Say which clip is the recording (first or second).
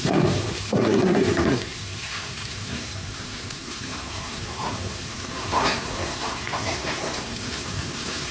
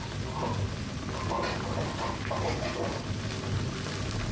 second